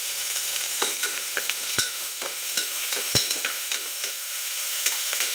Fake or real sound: fake